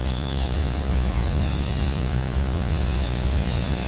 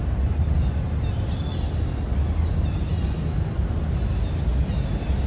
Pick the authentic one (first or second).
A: second